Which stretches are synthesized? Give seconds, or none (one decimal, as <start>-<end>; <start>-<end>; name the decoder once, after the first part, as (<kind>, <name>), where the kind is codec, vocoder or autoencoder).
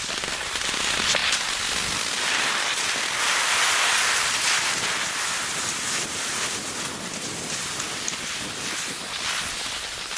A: none